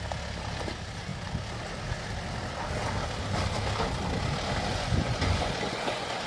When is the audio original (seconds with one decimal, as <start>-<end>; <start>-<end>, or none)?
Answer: 0.0-4.7